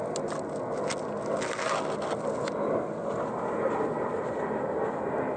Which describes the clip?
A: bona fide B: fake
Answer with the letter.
A